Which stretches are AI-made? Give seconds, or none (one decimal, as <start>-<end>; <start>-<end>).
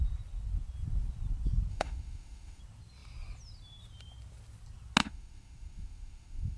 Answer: 1.7-2.6; 5.0-6.6